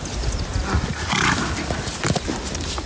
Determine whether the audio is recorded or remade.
recorded